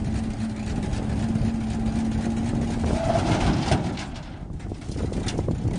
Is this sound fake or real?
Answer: real